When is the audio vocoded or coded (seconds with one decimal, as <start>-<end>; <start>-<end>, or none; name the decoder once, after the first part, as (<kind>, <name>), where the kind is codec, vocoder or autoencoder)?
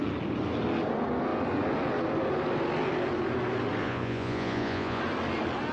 3.8-5.0 (vocoder, Vocos)